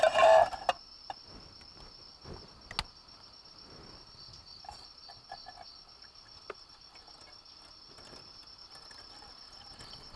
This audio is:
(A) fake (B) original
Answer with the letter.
B